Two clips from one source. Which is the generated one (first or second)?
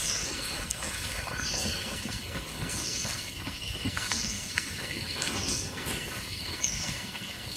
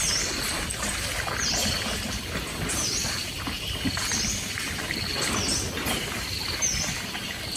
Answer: first